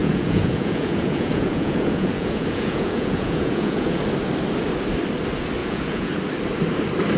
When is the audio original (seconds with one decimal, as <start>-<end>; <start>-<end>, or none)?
4.0-5.6; 6.2-7.2